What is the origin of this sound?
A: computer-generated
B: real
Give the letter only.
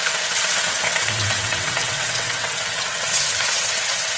A